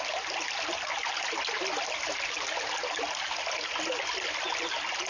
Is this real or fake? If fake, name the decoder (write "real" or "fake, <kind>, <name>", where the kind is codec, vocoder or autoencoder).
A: real